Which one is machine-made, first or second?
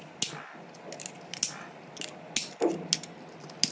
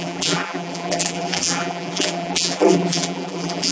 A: second